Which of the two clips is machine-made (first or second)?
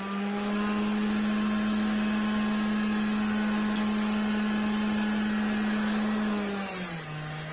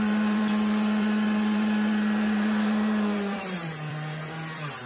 second